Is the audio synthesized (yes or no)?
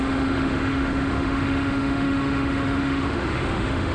yes